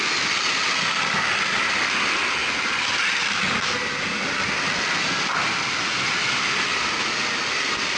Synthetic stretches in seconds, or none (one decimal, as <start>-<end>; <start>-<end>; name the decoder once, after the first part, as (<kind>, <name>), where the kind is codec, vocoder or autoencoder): none